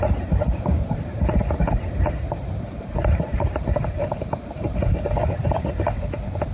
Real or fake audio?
fake